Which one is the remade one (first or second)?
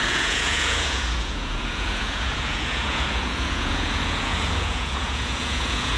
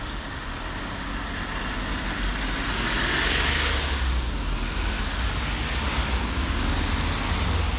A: first